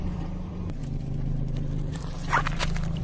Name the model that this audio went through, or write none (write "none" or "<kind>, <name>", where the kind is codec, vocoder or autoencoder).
vocoder, BigVGAN v2